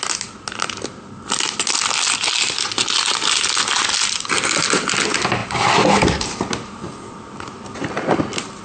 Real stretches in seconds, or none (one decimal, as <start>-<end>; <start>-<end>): 0.0-8.6